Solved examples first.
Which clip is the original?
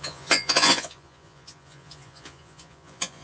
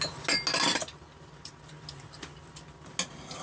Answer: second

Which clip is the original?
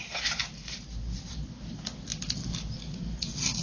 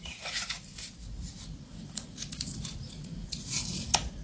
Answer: first